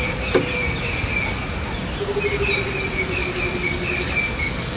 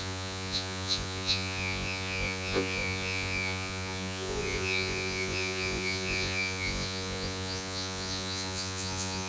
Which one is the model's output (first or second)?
second